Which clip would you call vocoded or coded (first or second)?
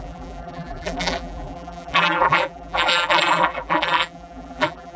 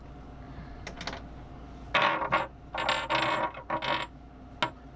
first